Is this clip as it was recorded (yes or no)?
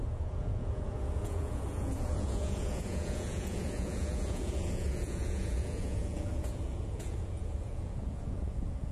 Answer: no